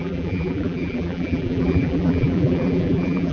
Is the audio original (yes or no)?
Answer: no